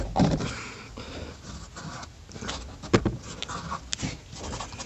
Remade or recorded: recorded